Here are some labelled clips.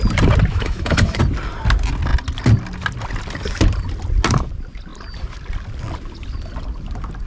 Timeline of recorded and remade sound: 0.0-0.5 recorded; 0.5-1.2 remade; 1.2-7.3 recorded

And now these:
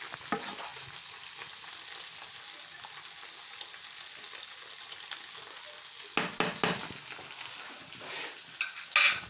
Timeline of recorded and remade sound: 0.0-9.3 recorded

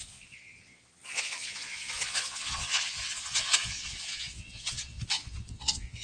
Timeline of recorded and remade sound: 0.0-6.0 remade

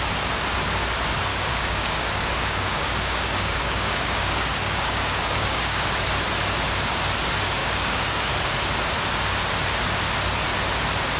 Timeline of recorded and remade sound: 0.0-1.3 recorded; 1.3-5.9 remade; 5.9-7.6 recorded; 7.6-8.3 remade; 8.3-11.2 recorded

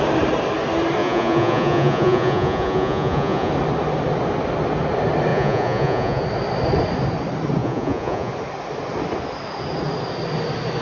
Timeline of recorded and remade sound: 0.0-1.0 recorded; 1.0-3.5 remade; 3.5-5.3 recorded; 5.3-6.2 remade; 6.2-7.6 recorded; 7.6-8.3 remade; 8.3-10.8 recorded

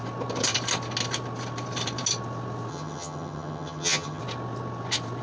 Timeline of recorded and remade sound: 0.0-2.7 recorded; 2.7-4.2 remade; 4.2-5.2 recorded

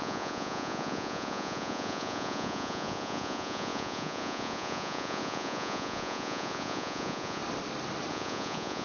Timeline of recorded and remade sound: 0.0-7.4 remade; 7.4-8.1 recorded; 8.1-8.8 remade

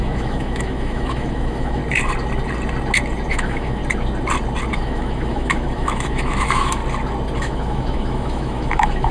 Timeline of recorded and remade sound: 0.0-1.8 remade; 1.8-3.3 recorded; 3.3-3.8 remade; 3.8-4.7 recorded; 4.7-6.8 remade; 6.8-7.4 recorded; 7.4-9.1 remade